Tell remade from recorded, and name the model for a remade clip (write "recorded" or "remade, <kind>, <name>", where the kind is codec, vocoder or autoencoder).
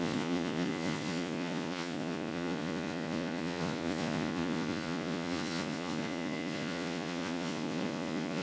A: remade, vocoder, Vocos